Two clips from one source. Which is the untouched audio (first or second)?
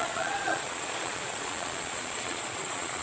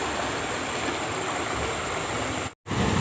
second